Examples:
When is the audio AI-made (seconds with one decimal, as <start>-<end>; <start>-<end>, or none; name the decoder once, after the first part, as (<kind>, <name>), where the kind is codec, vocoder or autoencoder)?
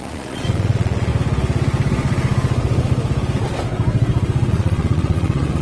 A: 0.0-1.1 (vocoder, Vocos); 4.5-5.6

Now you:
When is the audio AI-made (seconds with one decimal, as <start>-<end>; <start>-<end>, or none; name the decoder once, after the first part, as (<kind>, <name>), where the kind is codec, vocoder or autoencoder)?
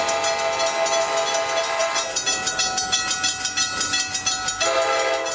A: none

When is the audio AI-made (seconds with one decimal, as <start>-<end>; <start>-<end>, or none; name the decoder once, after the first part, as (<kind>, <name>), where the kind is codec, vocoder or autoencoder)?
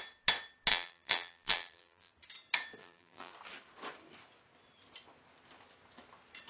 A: 0.7-2.1 (vocoder, BigVGAN v2); 2.8-3.3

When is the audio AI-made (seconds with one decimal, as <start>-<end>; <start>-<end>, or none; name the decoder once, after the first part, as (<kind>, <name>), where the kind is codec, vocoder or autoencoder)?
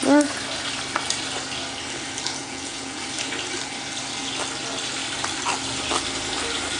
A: 2.4-3.0 (vocoder, Vocos)